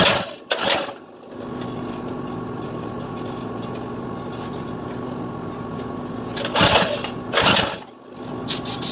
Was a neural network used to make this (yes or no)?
no